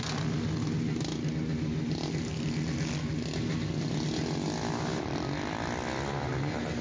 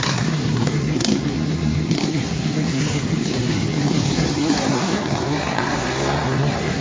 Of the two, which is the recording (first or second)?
first